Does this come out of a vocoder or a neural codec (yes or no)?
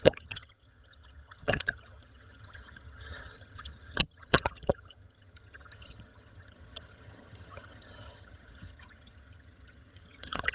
yes